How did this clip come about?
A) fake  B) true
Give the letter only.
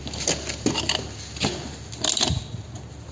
B